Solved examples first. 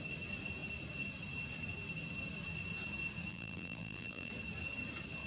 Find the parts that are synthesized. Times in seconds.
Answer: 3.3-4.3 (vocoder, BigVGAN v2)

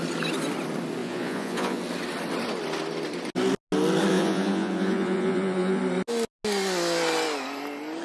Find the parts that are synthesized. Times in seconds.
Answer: 1.0-1.8 (vocoder, Vocos); 4.1-5.8

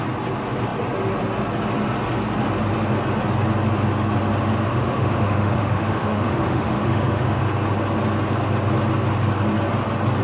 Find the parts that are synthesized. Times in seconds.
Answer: 4.7-7.4 (autoencoder, DAC-VAE)

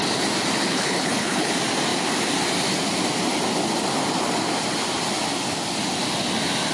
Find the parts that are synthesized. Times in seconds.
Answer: 0.7-1.5 (codec, HILCodec)